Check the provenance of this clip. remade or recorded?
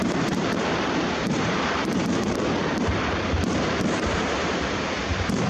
remade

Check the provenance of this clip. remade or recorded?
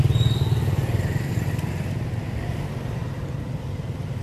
recorded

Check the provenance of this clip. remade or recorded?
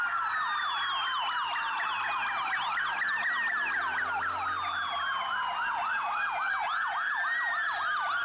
recorded